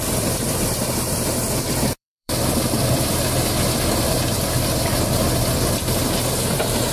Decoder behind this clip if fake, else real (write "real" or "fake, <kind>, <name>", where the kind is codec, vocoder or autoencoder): fake, vocoder, BigVGAN v2